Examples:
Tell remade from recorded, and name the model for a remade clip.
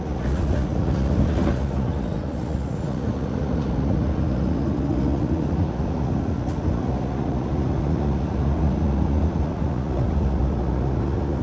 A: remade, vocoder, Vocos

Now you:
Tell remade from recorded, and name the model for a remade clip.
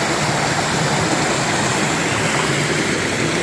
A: recorded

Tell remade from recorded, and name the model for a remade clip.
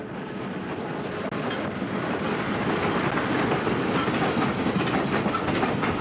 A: recorded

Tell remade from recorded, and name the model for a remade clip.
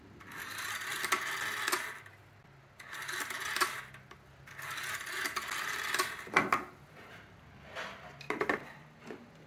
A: recorded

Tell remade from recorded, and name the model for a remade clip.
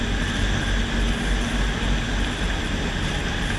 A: recorded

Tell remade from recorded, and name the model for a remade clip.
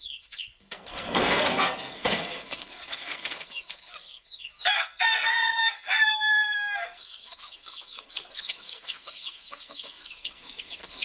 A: remade, codec, SNAC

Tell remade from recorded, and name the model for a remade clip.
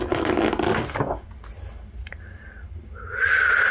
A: recorded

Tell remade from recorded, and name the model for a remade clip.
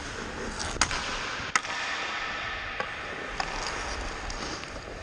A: recorded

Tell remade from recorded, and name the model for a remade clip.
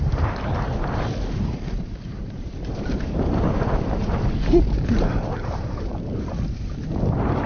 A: remade, vocoder, BigVGAN v2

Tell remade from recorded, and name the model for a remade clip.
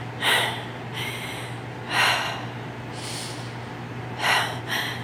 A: recorded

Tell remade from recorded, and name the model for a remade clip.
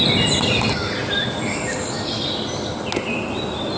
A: recorded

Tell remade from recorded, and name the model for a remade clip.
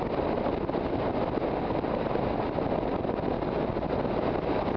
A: recorded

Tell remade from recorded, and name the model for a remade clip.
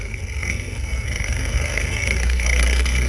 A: remade, codec, SNAC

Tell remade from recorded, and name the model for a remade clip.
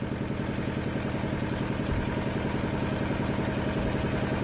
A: recorded